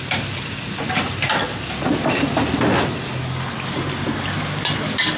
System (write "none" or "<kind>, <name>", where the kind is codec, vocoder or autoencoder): none